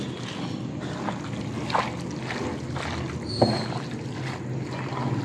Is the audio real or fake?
real